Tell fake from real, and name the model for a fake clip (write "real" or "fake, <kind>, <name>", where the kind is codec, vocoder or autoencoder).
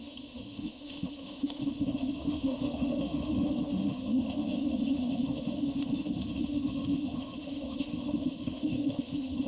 fake, autoencoder, DAC-VAE